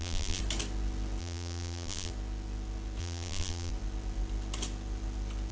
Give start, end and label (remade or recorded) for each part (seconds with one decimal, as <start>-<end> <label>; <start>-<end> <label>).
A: 0.0-0.4 remade; 0.4-1.2 recorded; 1.2-2.1 remade; 2.1-3.0 recorded; 3.0-3.7 remade; 3.7-5.5 recorded